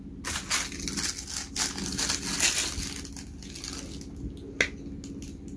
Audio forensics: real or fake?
real